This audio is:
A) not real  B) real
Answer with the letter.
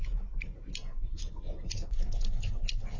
B